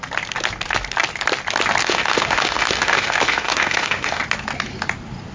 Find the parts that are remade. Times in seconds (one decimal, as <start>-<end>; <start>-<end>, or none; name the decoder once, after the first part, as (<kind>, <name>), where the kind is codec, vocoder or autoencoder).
1.8-4.2 (autoencoder, DAC-VAE)